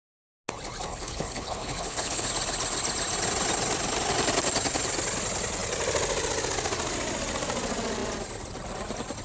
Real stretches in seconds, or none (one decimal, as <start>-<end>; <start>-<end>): 0.0-0.9; 2.3-9.2